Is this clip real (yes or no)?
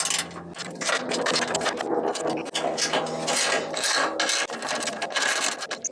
yes